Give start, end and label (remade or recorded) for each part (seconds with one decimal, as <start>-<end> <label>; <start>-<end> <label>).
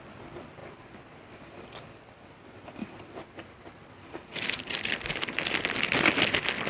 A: 0.0-6.7 recorded